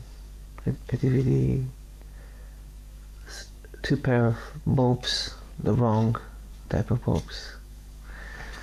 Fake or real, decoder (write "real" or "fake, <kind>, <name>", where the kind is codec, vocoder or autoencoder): fake, codec, DAC